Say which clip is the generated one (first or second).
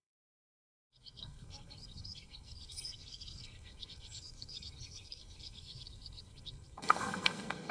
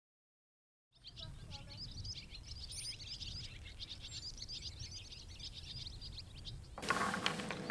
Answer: first